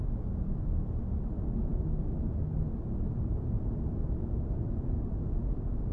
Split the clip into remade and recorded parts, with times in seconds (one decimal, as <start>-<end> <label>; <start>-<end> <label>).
0.0-5.9 recorded